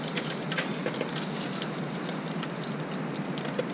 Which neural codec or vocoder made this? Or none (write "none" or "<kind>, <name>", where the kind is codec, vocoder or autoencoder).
none